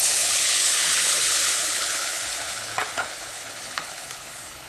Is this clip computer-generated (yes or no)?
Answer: yes